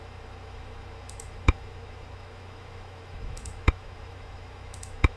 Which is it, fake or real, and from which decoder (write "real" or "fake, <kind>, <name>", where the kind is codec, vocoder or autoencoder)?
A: fake, autoencoder, DAC-VAE